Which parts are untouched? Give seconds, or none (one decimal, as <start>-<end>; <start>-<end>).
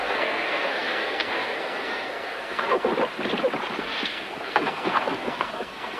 2.9-3.8